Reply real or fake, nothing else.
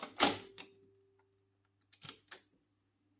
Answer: real